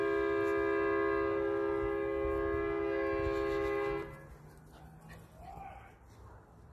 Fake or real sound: real